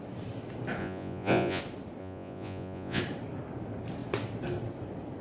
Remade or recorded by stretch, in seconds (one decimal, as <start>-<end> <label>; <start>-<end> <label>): 0.0-0.8 recorded; 0.8-1.6 remade; 1.6-2.0 recorded; 2.0-3.0 remade; 3.0-5.2 recorded